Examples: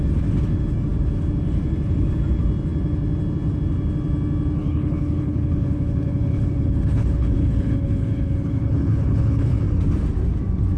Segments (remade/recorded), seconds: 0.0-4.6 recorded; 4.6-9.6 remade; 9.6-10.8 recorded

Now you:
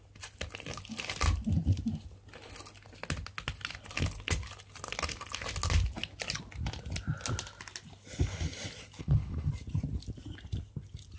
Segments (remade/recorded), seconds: 0.0-9.0 recorded; 9.0-9.5 remade; 9.5-11.2 recorded

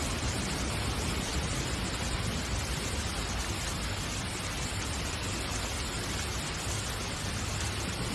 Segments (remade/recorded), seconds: 0.0-8.1 recorded

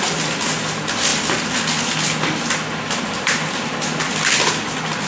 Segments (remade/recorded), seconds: 0.0-5.1 recorded